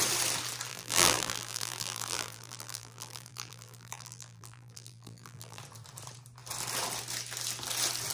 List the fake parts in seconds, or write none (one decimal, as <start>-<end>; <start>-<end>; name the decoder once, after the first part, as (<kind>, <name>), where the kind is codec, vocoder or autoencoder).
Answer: 0.7-5.6 (vocoder, BigVGAN v2)